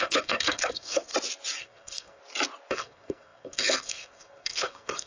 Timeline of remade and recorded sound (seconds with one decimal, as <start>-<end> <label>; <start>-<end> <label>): 0.0-1.1 remade; 1.1-1.6 recorded; 1.6-2.2 remade; 2.2-2.7 recorded; 2.7-5.1 remade